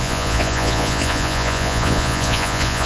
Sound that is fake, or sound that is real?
fake